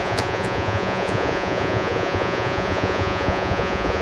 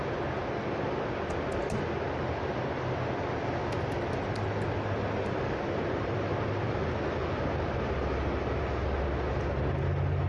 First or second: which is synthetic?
first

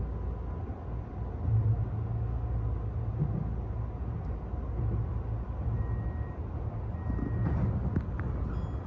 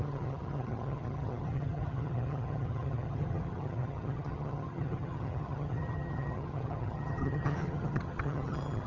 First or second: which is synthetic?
second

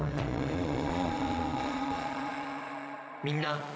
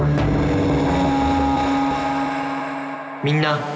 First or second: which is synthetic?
first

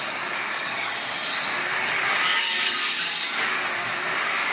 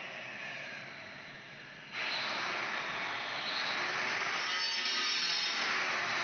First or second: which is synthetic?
first